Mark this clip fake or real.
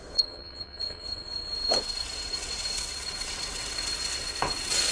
fake